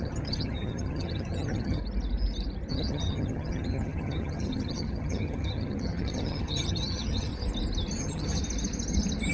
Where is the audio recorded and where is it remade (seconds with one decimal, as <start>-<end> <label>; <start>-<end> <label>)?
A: 0.0-1.8 remade; 1.8-2.7 recorded; 2.7-7.3 remade; 7.3-8.0 recorded; 8.0-8.4 remade; 8.4-9.3 recorded